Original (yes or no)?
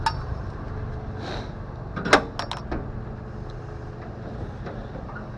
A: yes